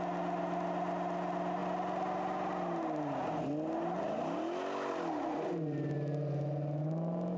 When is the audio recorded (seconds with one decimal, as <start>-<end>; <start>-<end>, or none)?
0.0-7.4